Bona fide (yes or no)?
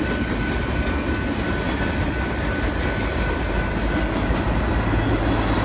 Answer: yes